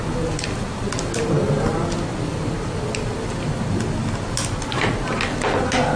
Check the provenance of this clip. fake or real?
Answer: real